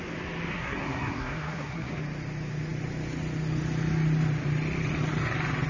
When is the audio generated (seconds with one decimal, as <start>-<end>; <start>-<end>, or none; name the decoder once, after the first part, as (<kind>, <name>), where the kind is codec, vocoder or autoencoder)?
0.5-2.0 (codec, SNAC)

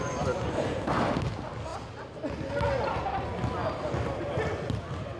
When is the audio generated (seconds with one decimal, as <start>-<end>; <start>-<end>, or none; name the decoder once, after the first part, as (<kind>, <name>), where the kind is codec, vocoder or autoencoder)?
none